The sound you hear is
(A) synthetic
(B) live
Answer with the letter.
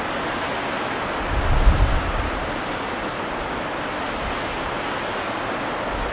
B